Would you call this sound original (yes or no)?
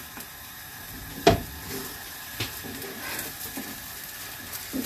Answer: yes